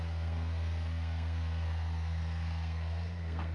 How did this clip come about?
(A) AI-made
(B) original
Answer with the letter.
A